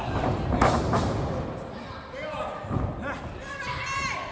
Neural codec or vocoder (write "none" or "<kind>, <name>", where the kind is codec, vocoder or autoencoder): none